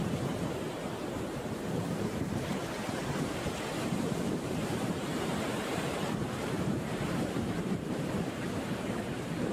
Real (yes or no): no